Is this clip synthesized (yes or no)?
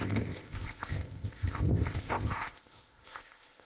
yes